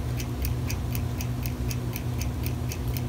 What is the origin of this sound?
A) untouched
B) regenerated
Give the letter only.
A